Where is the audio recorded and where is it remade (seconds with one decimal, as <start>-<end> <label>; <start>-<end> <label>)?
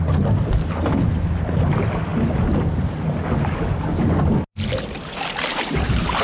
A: 0.0-6.2 recorded